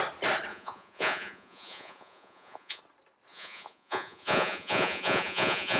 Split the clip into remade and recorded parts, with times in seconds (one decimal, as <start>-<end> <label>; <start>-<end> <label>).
0.0-0.5 recorded; 0.5-2.8 remade; 2.8-3.3 recorded; 3.3-5.8 remade